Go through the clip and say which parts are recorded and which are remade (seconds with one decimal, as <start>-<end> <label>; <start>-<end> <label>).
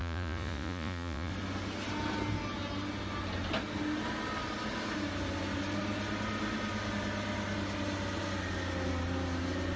0.0-1.3 remade; 1.3-9.8 recorded